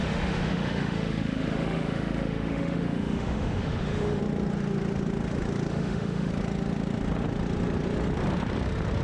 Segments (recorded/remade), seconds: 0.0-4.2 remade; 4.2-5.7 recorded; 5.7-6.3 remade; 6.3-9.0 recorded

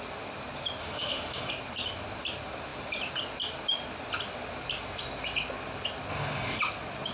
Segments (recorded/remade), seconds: 0.0-0.8 recorded; 0.8-1.5 remade; 1.5-6.1 recorded; 6.1-6.6 remade; 6.6-7.1 recorded

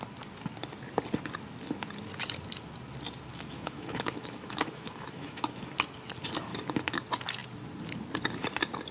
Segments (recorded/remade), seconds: 0.0-3.3 recorded; 3.3-5.6 remade; 5.6-6.5 recorded; 6.5-7.0 remade; 7.0-8.9 recorded